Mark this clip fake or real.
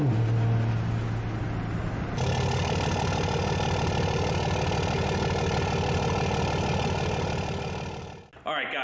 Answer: real